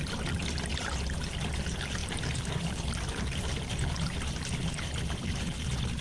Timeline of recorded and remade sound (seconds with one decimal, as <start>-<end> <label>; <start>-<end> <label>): 0.0-2.0 recorded; 2.0-3.7 remade; 3.7-6.0 recorded